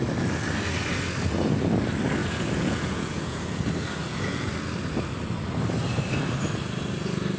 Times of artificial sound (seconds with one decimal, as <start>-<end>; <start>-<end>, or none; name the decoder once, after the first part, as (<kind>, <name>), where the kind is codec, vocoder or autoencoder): 2.2-3.6 (vocoder, Vocos); 4.0-4.5